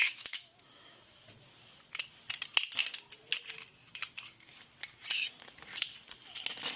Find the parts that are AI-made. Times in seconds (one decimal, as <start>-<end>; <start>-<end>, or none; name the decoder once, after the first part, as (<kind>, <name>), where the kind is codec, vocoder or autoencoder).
0.0-1.3 (autoencoder, DAC-VAE)